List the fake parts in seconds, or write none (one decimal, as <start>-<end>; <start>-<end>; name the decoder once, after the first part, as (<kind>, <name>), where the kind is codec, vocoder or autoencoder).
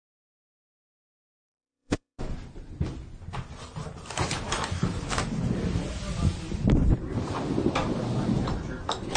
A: 0.0-2.2 (vocoder, Vocos)